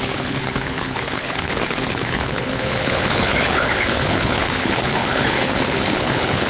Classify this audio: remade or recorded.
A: remade